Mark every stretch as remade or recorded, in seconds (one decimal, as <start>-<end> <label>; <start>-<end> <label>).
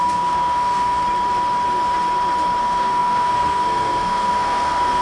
0.0-1.0 remade; 1.0-2.6 recorded; 2.6-5.0 remade